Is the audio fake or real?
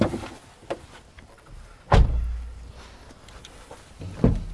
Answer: real